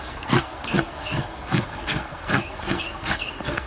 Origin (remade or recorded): remade